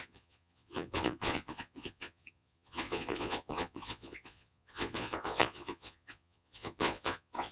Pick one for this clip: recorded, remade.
remade